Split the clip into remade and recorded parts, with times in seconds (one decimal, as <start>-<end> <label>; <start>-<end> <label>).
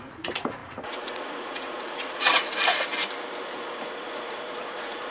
0.0-2.9 remade; 2.9-3.5 recorded; 3.5-5.1 remade